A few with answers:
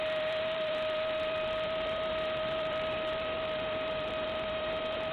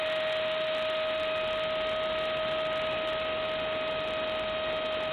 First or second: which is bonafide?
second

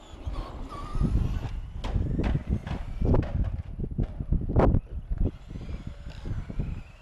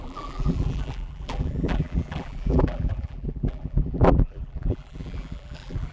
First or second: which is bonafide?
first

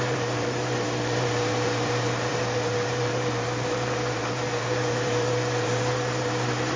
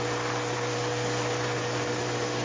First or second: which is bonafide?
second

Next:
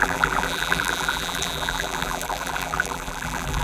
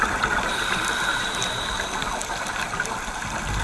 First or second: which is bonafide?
second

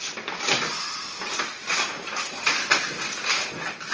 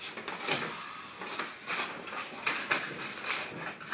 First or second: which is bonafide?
second